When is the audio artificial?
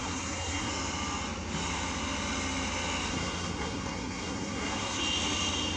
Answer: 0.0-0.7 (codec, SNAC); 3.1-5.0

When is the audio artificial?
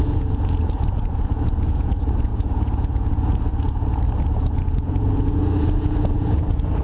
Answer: 0.0-6.8 (vocoder, Vocos)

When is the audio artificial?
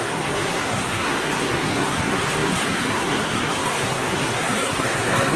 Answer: 0.0-5.4 (codec, SNAC)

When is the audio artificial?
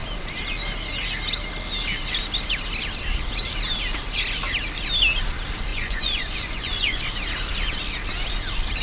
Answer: 5.7-7.0 (vocoder, Vocos)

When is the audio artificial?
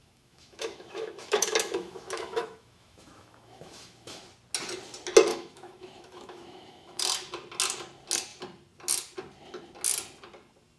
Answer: 0.0-4.2 (autoencoder, DAC-VAE); 5.3-7.0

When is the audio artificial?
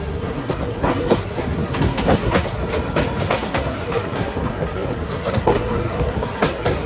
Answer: 0.0-2.6 (codec, SNAC); 3.2-6.9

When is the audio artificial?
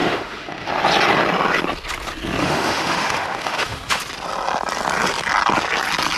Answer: 0.0-0.7 (autoencoder, DAC-VAE); 2.4-4.0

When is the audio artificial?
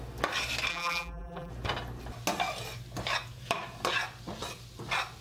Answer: 0.7-1.5 (vocoder, BigVGAN v2)